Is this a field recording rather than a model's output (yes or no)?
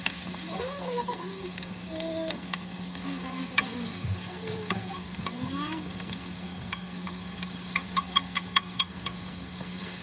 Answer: no